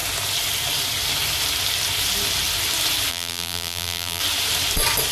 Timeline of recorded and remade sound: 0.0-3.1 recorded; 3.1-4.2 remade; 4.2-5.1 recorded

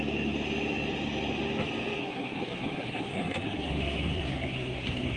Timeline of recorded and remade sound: 0.0-2.0 recorded; 2.0-5.2 remade

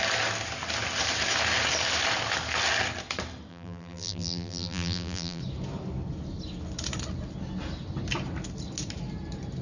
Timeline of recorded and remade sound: 0.0-3.5 recorded; 3.5-5.4 remade; 5.4-9.6 recorded

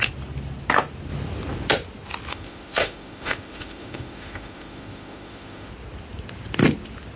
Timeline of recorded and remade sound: 0.0-2.3 recorded; 2.3-5.7 remade; 5.7-7.2 recorded

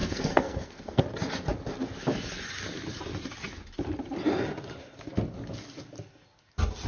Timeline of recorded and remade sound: 0.0-1.0 remade; 1.0-6.9 recorded

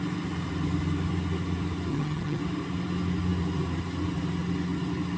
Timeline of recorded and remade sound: 0.0-1.9 recorded; 1.9-2.4 remade; 2.4-5.2 recorded

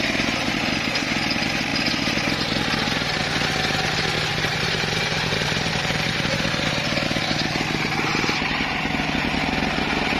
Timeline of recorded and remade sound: 0.0-4.3 recorded; 4.3-6.6 remade; 6.6-8.1 recorded; 8.1-8.8 remade; 8.8-10.2 recorded